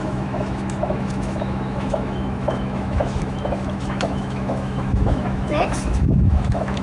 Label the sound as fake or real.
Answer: fake